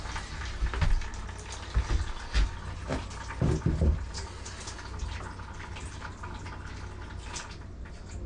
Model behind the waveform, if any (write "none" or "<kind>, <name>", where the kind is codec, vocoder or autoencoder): none